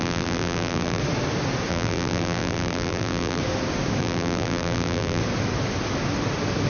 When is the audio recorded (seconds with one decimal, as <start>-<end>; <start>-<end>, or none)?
1.0-1.7; 3.4-4.0; 5.2-6.7